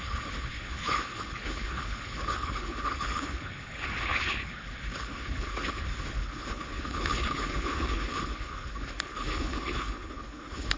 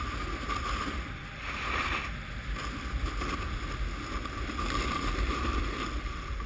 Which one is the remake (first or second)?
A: first